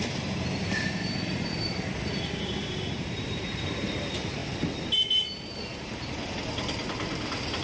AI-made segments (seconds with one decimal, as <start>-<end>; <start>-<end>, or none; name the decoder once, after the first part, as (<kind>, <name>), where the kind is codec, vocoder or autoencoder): 0.0-4.4 (vocoder, BigVGAN v2)

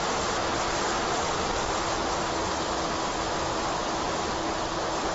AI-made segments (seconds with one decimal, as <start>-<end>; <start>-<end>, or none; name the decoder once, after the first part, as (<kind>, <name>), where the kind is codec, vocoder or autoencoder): 0.4-2.6 (vocoder, BigVGAN v2)

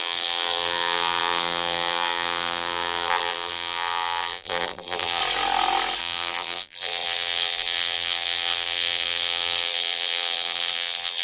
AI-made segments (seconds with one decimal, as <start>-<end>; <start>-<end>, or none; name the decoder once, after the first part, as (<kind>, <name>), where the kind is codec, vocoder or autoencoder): 0.0-5.2 (vocoder, BigVGAN v2); 6.0-11.2

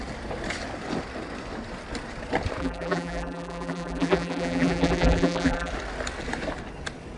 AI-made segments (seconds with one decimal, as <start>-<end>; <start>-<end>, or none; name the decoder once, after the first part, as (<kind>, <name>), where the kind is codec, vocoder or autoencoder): 2.6-5.7 (vocoder, BigVGAN v2)

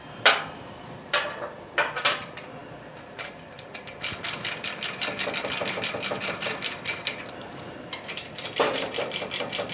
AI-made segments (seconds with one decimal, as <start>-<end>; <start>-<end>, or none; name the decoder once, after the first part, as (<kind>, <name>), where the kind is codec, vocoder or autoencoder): 0.0-9.7 (vocoder, BigVGAN v2)

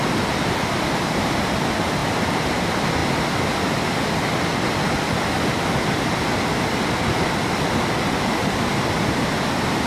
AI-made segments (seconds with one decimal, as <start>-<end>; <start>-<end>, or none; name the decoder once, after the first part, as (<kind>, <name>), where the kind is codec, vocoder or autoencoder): none